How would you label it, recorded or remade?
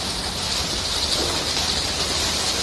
recorded